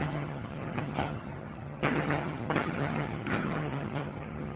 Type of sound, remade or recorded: remade